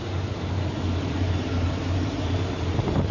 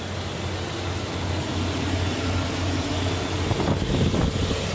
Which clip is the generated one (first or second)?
first